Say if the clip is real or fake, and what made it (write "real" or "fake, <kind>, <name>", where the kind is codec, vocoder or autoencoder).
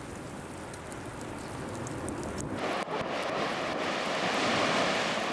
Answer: real